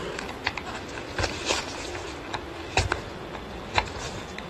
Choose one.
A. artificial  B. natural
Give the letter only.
B